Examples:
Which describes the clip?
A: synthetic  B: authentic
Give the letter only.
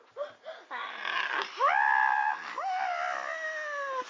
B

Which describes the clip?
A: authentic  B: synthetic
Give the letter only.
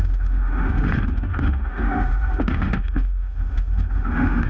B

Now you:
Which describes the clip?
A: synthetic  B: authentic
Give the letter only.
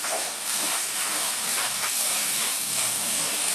A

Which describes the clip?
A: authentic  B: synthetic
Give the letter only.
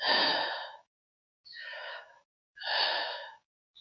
B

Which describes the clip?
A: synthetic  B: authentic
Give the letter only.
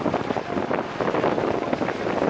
B